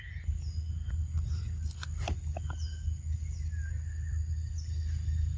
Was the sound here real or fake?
real